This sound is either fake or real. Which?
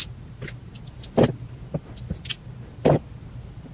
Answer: real